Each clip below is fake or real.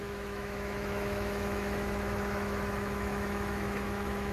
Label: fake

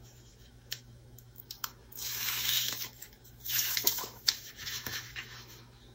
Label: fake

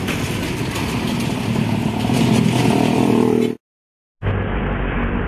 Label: real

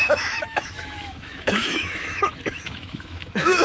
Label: fake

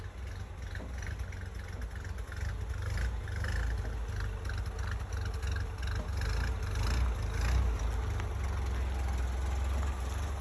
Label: real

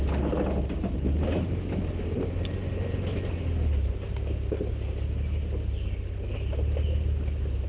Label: real